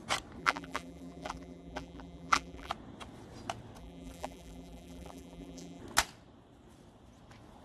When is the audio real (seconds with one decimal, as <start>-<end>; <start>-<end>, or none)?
0.0-0.4; 2.7-3.8; 5.8-7.6